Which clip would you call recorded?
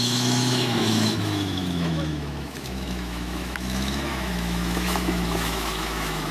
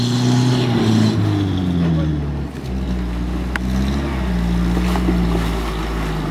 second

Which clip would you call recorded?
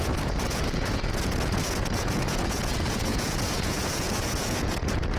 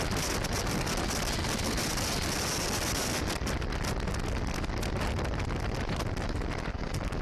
second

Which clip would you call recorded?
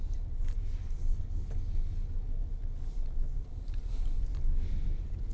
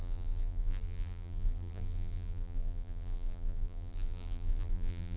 first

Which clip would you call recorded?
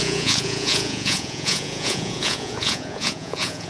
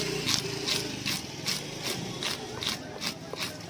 second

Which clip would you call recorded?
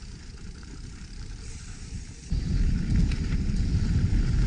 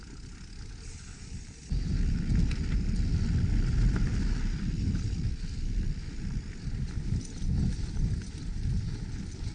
second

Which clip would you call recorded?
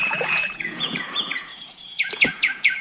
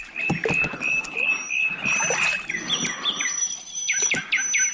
second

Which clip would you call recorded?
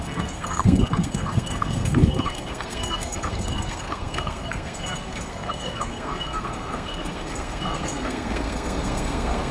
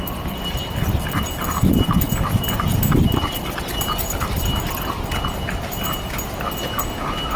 second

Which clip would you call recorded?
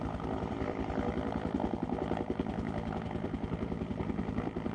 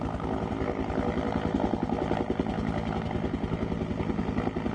second